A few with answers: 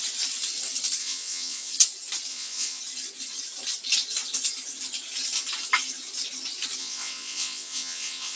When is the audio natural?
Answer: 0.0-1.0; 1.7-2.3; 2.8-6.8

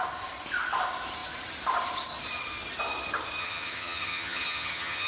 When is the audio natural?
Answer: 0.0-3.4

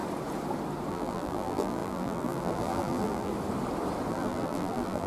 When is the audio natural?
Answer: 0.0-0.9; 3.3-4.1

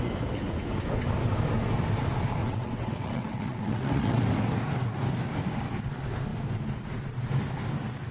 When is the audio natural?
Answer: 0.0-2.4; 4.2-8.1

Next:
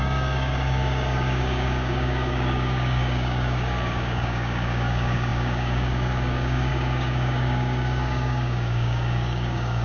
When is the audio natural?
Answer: none